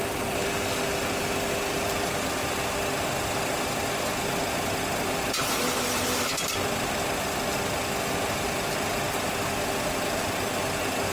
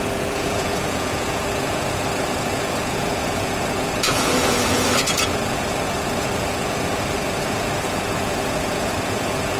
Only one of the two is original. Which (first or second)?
first